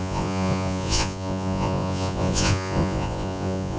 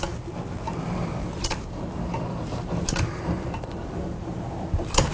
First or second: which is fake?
first